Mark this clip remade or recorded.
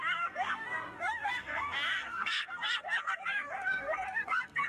remade